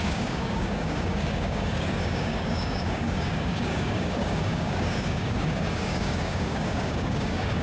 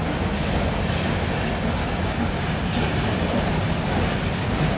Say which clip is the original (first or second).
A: second